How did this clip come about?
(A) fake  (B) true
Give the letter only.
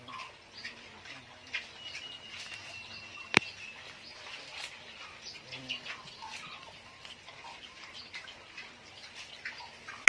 B